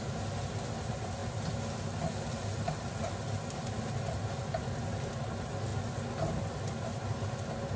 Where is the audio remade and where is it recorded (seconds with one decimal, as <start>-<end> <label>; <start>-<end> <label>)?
0.0-7.8 recorded